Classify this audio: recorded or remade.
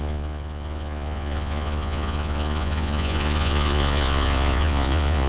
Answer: remade